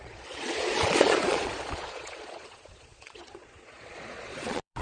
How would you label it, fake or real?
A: fake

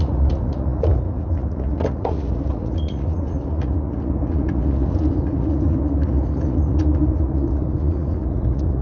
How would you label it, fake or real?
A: fake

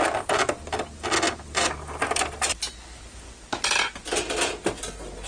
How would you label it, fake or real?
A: real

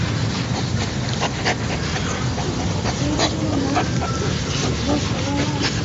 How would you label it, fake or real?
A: real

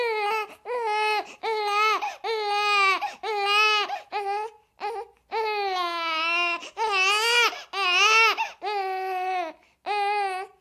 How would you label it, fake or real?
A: real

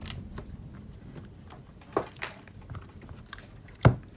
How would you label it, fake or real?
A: real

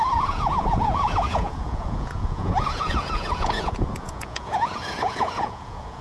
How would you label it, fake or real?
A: fake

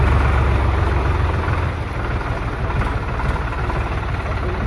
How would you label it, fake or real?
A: real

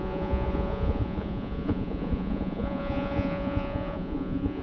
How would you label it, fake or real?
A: fake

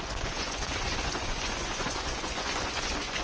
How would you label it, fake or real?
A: fake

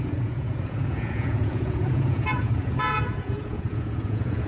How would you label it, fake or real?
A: fake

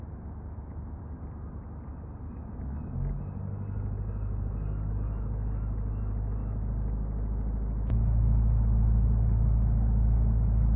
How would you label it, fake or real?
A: real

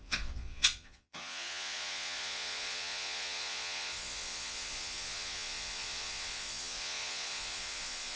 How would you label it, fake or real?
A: fake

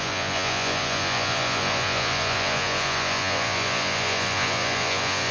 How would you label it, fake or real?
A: fake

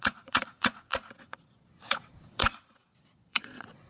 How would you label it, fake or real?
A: fake